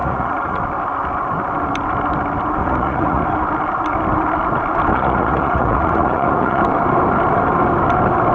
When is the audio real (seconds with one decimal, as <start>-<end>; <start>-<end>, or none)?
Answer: 0.6-2.6; 3.2-4.9; 6.6-8.3